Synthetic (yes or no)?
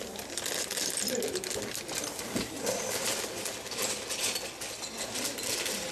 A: no